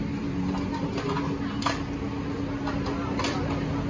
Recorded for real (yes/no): yes